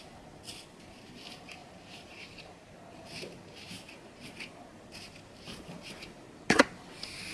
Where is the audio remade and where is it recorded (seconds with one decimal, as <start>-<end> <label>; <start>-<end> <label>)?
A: 0.0-1.6 recorded; 1.6-2.7 remade; 2.7-4.7 recorded; 4.7-6.6 remade; 6.6-7.3 recorded